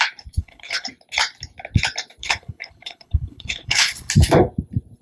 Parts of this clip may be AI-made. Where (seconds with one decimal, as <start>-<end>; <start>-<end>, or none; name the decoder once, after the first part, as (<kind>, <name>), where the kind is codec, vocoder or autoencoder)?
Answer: 0.4-0.9 (codec, HILCodec); 2.2-4.1